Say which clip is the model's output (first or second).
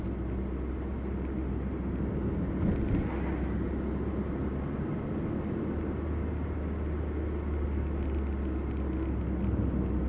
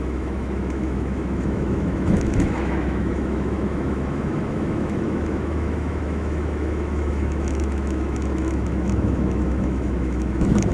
second